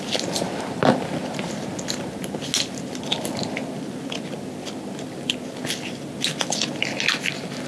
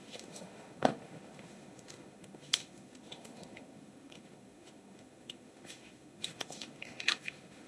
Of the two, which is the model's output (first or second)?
second